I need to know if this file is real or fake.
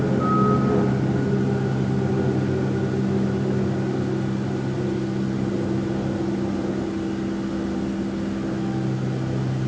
real